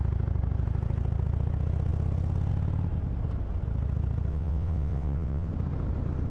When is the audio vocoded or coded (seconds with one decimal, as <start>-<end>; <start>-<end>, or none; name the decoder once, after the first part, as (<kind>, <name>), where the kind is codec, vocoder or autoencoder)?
4.3-5.5 (vocoder, WaveNeXt)